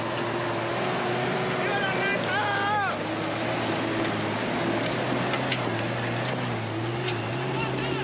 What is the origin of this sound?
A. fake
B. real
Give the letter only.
B